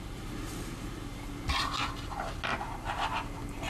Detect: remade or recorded recorded